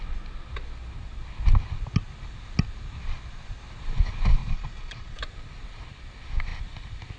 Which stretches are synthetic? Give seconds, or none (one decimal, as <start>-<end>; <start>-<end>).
4.4-5.2